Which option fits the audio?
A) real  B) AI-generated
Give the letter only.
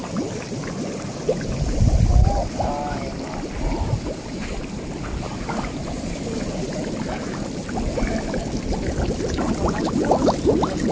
A